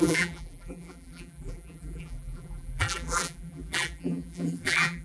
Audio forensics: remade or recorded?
remade